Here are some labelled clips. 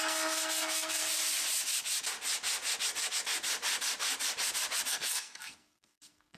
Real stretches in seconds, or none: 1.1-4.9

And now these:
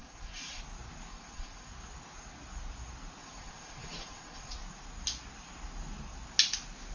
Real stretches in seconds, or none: 0.6-1.1; 1.7-3.2; 4.6-6.9